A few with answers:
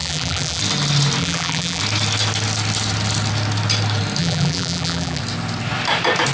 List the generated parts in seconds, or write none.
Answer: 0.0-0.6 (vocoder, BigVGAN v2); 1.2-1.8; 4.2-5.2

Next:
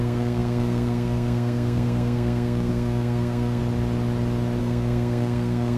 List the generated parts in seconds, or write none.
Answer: 0.0-3.6 (codec, SNAC); 4.6-5.8

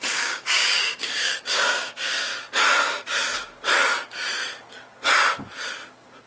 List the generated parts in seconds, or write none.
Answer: 0.0-2.3 (codec, DAC)

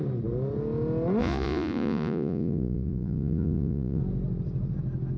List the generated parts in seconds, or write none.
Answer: 1.2-4.0 (vocoder, Vocos)

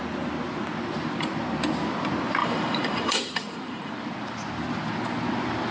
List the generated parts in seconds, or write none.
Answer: 2.4-3.9 (vocoder, BigVGAN v2)